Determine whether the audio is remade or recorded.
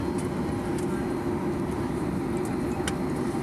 recorded